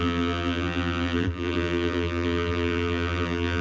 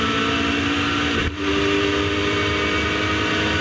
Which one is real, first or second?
second